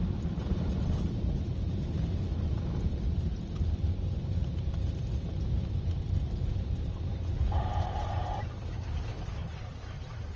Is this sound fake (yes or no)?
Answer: yes